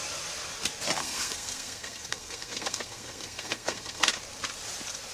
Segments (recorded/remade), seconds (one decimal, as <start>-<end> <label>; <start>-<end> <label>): 0.0-1.0 recorded; 1.0-4.1 remade; 4.1-5.1 recorded